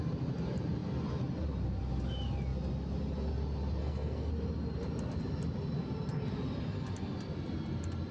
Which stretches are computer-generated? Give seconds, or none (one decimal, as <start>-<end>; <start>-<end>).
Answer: 3.8-4.3